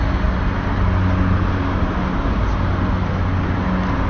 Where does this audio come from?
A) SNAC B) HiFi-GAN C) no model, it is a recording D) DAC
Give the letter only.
C